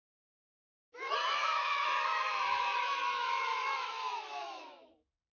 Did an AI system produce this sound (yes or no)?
yes